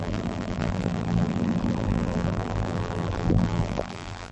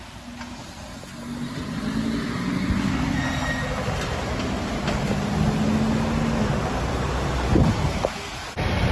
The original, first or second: second